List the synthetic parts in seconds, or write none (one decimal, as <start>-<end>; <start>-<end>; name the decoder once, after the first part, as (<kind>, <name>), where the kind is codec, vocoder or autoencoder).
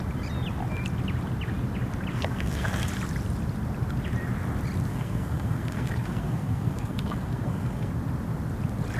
2.1-2.9 (codec, SNAC); 4.9-7.9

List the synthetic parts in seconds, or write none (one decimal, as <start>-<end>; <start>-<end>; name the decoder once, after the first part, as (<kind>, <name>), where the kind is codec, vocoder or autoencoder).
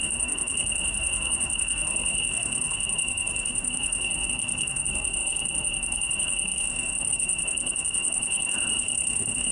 0.0-9.5 (codec, SNAC)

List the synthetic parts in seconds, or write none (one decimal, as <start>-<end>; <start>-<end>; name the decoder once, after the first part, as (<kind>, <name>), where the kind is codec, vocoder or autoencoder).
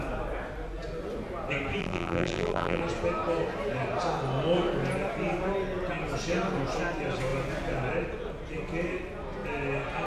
1.8-2.8 (vocoder, BigVGAN v2)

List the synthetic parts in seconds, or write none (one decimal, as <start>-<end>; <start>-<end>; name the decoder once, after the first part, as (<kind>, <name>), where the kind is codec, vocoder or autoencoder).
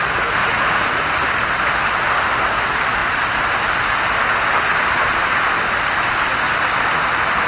0.4-1.2 (vocoder, Vocos)